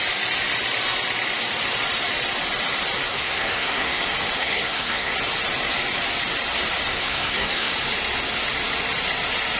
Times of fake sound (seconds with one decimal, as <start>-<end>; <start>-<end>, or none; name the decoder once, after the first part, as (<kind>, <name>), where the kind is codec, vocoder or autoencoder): 3.1-4.0 (codec, SNAC); 4.4-5.1; 6.9-7.7

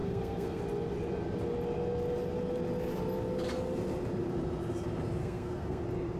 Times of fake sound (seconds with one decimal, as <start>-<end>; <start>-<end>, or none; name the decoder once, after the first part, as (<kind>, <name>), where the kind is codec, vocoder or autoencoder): 0.0-0.6 (codec, SNAC); 5.2-5.8